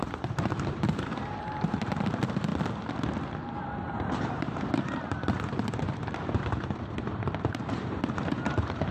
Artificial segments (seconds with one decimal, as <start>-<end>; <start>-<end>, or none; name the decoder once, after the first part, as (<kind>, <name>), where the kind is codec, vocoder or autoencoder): 0.0-2.5 (vocoder, BigVGAN v2); 3.6-8.9